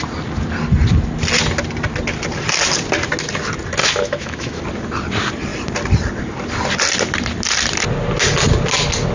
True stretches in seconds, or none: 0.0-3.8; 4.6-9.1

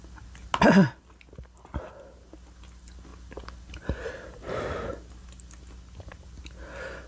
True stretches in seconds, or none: 0.0-7.1

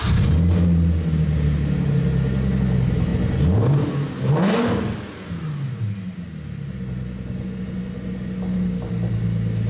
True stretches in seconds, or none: 0.0-9.7

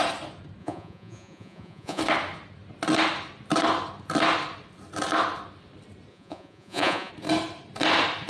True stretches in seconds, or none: 0.0-0.6; 2.0-6.1; 7.1-8.3

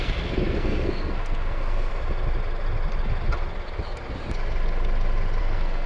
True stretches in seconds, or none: 1.9-5.4

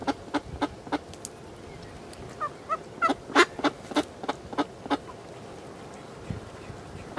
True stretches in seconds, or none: 0.0-7.2